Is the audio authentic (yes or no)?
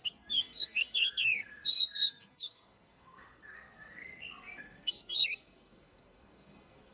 no